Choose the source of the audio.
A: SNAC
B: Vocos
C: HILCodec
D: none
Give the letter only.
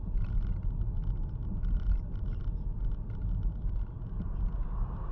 D